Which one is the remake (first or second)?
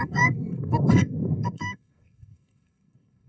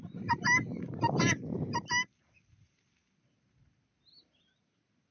first